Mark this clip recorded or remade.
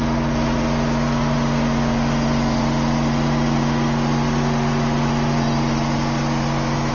recorded